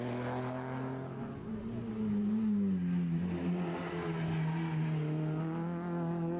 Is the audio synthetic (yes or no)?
no